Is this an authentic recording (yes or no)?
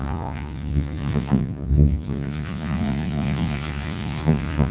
no